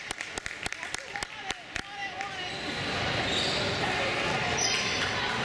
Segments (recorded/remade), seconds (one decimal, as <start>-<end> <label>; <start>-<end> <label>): 0.0-2.0 recorded; 2.0-3.8 remade; 3.8-5.4 recorded